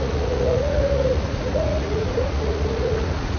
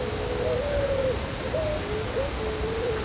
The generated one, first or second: first